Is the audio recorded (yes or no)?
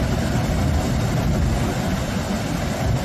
yes